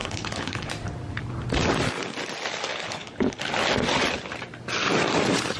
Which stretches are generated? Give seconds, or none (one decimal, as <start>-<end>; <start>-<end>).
0.0-0.7; 2.7-3.4